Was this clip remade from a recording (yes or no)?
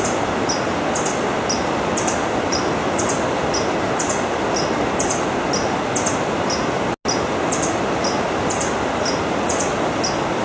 no